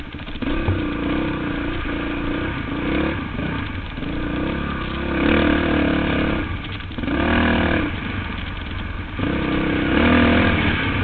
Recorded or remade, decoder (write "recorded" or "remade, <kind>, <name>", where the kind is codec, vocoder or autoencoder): recorded